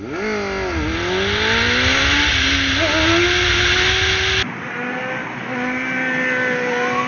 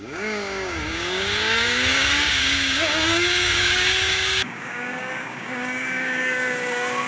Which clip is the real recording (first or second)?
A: first